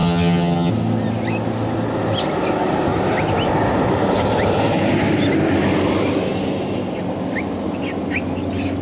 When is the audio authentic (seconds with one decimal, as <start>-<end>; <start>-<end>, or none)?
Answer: 0.7-8.8